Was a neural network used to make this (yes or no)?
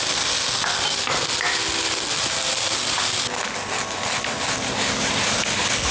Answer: no